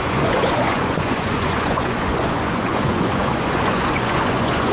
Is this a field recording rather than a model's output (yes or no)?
no